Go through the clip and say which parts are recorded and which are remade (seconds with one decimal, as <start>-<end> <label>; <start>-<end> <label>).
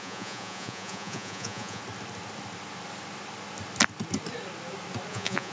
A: 0.0-1.8 remade; 1.8-5.1 recorded; 5.1-5.5 remade